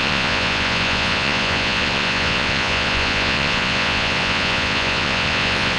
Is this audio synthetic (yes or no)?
yes